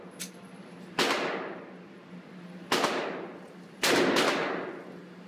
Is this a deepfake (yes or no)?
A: no